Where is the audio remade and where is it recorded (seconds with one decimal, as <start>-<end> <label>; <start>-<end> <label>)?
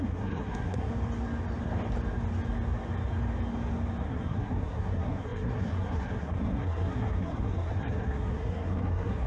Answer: 0.0-0.9 remade; 0.9-4.0 recorded; 4.0-9.3 remade